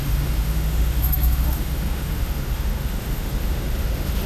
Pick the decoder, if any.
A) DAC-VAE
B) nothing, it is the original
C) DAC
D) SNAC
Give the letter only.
A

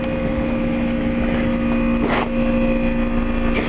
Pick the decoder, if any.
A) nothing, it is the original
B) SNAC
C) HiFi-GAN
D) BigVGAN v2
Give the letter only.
A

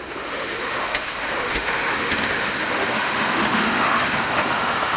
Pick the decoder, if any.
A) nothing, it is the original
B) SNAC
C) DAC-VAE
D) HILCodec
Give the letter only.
C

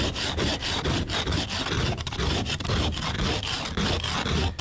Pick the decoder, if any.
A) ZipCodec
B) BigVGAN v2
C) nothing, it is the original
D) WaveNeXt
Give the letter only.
B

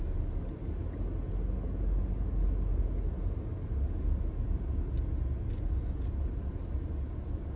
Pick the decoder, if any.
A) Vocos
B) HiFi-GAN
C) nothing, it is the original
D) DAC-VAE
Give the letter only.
C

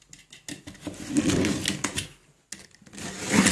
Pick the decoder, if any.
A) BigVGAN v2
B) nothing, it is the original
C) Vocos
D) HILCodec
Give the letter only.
B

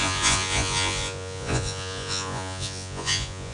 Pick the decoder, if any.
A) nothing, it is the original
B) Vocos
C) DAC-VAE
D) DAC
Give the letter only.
B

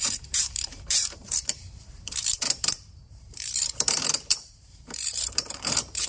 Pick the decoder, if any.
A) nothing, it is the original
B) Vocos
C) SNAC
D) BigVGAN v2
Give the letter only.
D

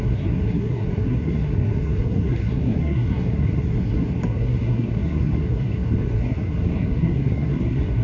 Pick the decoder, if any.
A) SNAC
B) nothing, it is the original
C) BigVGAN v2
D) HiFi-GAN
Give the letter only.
A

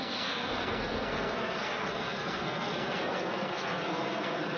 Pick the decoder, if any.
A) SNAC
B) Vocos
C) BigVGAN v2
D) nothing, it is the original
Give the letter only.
A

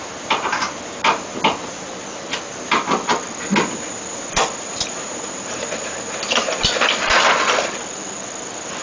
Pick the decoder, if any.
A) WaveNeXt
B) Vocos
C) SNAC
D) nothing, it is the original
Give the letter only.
D